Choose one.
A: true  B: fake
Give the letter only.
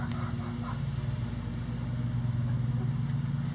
A